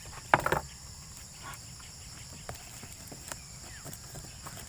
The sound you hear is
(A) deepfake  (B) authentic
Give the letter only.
A